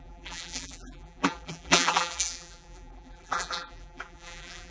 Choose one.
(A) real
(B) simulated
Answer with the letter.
B